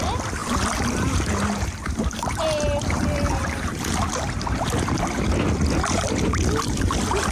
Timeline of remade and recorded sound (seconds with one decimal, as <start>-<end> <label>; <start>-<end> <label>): 0.0-0.4 recorded; 0.4-4.4 remade; 4.4-7.3 recorded

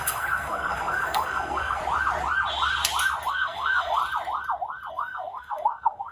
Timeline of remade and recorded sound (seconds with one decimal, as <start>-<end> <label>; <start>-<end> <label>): 0.0-1.8 remade; 1.8-3.3 recorded; 3.3-4.0 remade; 4.0-4.9 recorded; 4.9-6.1 remade

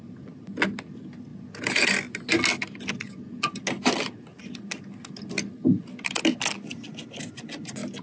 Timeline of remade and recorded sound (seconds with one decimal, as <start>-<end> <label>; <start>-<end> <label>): 0.0-8.0 recorded

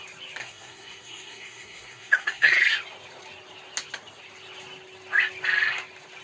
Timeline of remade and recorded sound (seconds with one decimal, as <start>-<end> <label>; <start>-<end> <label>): 0.0-0.4 recorded; 0.4-2.6 remade; 2.6-6.2 recorded

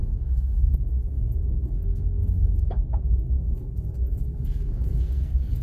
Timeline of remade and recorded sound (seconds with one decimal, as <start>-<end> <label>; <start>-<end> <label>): 0.0-5.6 remade

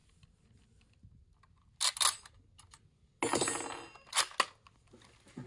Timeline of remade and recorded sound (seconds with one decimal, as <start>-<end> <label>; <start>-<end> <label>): 0.0-5.5 recorded